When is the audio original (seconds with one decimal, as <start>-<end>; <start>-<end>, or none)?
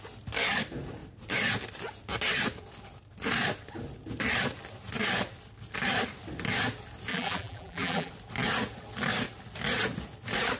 0.0-7.1; 8.1-10.6